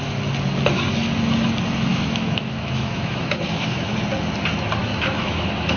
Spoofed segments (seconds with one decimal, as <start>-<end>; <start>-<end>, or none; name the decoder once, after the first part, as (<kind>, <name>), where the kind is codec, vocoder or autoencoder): 1.9-3.9 (autoencoder, DAC-VAE); 4.8-5.8